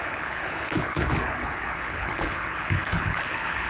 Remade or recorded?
remade